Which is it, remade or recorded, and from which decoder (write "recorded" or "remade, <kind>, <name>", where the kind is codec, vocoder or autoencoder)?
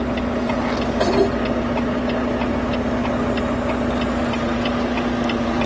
recorded